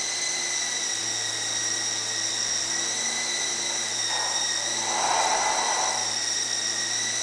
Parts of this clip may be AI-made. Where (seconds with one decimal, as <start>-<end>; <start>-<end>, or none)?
none